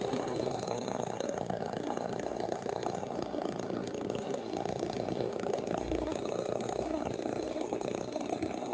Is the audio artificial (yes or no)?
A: yes